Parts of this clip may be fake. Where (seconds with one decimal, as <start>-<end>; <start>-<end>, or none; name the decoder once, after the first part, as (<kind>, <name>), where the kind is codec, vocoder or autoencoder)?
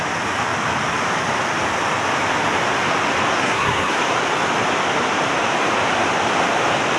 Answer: 3.3-4.0 (codec, SNAC)